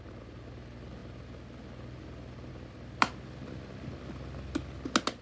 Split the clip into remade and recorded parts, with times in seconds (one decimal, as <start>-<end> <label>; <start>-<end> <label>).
0.0-5.2 recorded